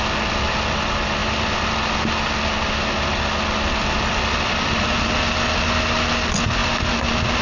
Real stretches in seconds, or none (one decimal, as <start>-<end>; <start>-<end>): 0.0-7.4